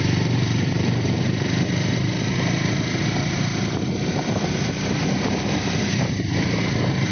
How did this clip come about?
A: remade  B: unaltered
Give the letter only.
A